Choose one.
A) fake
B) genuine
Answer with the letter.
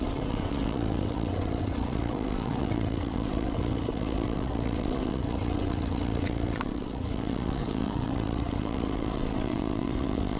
A